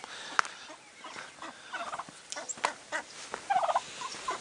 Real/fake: real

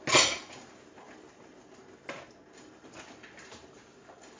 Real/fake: real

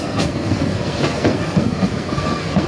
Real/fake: fake